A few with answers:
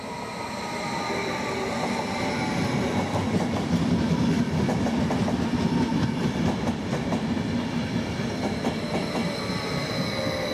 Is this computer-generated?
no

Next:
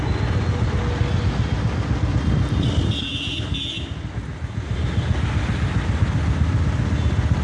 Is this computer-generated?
no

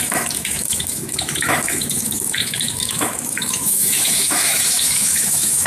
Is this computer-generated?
yes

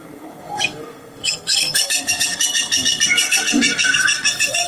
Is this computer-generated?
yes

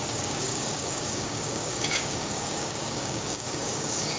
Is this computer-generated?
yes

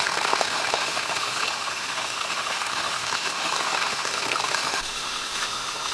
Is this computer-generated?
yes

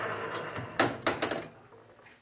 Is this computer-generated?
no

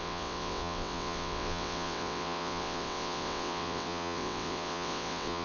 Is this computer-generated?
yes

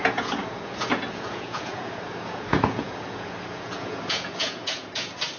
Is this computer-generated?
yes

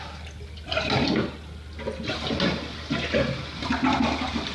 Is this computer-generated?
no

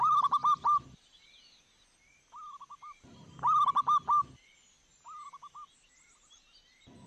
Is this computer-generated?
no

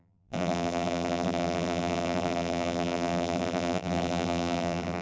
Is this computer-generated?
yes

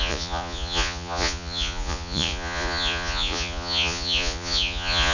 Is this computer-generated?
yes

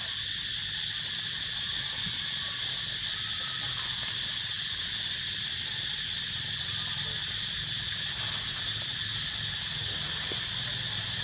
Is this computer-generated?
no